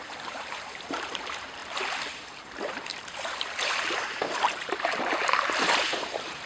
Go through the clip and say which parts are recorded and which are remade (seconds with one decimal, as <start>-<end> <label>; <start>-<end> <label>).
0.0-6.5 remade